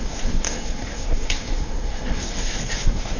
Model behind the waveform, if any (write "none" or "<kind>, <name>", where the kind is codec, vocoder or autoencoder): codec, SNAC